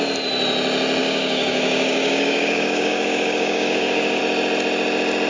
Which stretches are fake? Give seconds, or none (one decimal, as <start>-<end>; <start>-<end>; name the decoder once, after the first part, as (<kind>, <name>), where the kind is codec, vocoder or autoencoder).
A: 1.0-4.2 (codec, DAC)